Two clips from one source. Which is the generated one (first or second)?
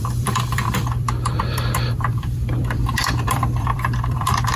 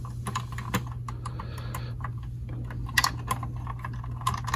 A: first